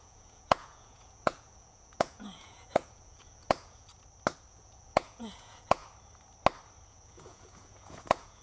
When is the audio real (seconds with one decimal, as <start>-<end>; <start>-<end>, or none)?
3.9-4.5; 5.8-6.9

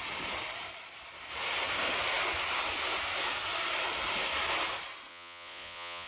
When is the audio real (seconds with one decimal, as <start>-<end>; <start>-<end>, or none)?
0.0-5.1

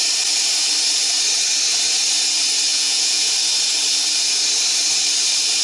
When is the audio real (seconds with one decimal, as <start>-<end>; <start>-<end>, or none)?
0.0-2.7; 3.3-5.6

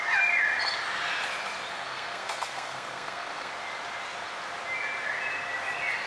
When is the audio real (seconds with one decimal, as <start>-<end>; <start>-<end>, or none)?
0.0-1.7; 3.5-6.1